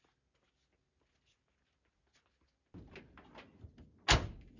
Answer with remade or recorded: recorded